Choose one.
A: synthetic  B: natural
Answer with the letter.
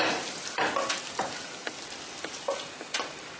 B